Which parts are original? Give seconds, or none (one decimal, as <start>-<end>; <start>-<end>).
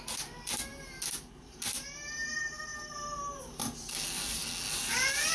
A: 0.0-5.3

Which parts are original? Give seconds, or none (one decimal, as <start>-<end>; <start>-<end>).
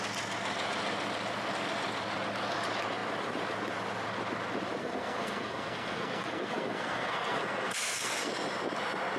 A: 0.0-4.8; 8.3-9.2